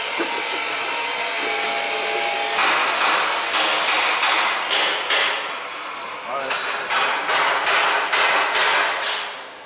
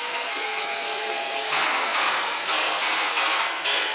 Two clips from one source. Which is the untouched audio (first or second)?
first